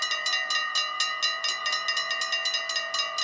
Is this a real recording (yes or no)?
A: yes